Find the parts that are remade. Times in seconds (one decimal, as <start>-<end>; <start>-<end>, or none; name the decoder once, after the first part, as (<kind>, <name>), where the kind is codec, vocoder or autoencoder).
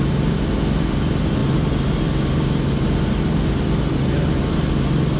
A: none